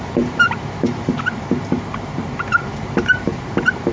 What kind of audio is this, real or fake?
fake